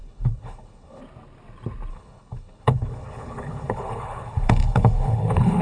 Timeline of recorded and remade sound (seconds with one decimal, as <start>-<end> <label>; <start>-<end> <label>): 0.0-1.0 remade; 1.0-1.9 recorded; 1.9-5.6 remade